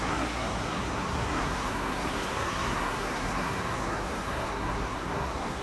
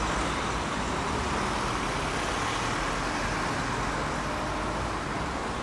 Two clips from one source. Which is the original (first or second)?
second